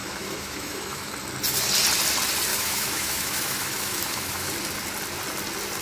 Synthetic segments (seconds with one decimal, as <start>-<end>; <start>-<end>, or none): 0.0-1.1; 2.5-4.5

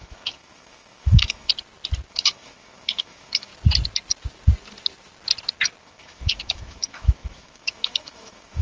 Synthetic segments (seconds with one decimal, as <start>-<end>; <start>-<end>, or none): 0.0-1.5; 2.1-3.5; 5.8-8.6